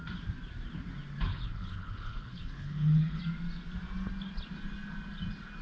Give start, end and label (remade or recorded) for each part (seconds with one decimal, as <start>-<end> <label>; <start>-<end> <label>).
0.0-1.3 recorded; 1.3-3.2 remade; 3.2-5.6 recorded